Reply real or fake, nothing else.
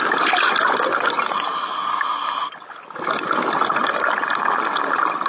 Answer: real